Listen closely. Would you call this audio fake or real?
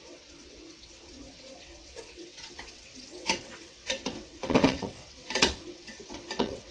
fake